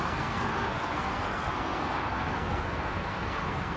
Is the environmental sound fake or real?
fake